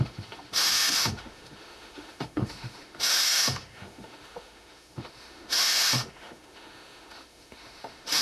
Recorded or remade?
remade